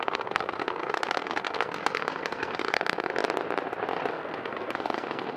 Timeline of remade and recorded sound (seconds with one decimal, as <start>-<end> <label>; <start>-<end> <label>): 0.0-3.1 remade; 3.1-4.1 recorded; 4.1-5.4 remade